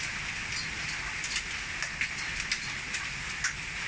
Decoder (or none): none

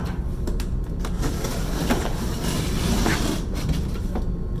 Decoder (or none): none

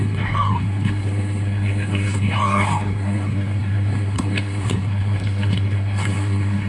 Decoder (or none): codec, SNAC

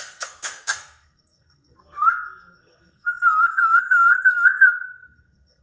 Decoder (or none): codec, SNAC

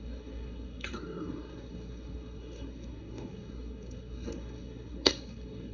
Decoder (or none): codec, SNAC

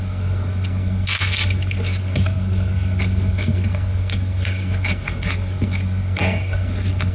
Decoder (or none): codec, SNAC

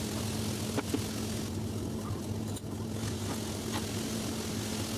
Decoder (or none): none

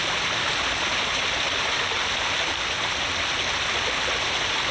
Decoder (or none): none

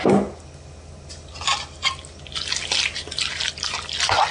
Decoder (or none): none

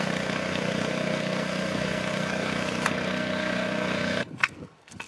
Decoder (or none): codec, SNAC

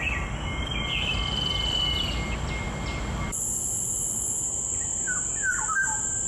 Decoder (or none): none